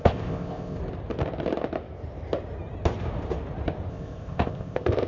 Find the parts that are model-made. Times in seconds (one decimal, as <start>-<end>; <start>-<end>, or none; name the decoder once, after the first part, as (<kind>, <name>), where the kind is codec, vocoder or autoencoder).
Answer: 0.0-0.8 (codec, ZipCodec); 3.9-5.1